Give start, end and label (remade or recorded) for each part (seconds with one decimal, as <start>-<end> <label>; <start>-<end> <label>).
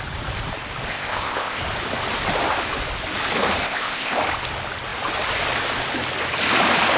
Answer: 0.0-0.9 recorded; 0.9-1.6 remade; 1.6-3.6 recorded; 3.6-4.2 remade; 4.2-7.0 recorded